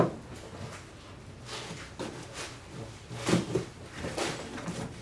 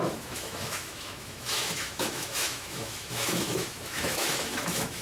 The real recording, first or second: first